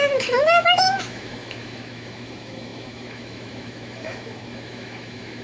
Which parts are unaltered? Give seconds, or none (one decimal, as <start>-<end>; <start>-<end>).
none